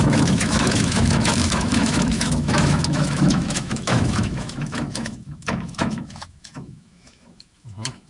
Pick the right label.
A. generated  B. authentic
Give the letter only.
A